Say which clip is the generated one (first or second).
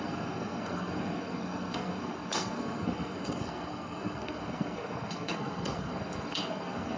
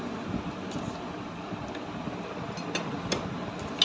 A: first